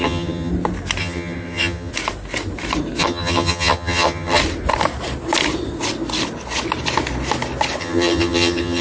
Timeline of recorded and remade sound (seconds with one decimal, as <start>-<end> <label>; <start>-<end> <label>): 0.0-0.5 remade; 0.5-1.0 recorded; 1.0-1.9 remade; 1.9-3.0 recorded; 3.0-4.4 remade; 4.4-7.8 recorded; 7.8-8.8 remade